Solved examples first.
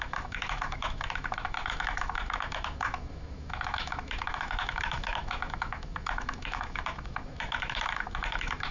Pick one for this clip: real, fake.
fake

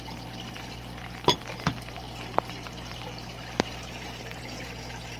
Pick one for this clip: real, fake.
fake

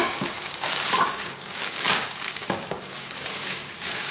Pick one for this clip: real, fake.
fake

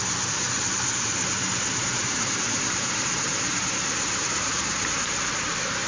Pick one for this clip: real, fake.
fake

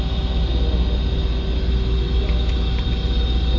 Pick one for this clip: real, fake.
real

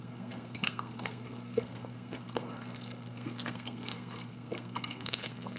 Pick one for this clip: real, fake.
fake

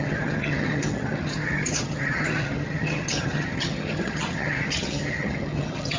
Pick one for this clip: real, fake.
fake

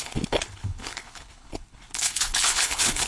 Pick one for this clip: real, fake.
fake